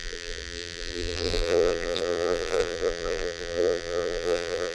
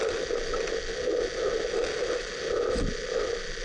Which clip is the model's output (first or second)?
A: first